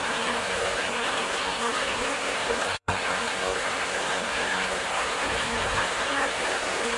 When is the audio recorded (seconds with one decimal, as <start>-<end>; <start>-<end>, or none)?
none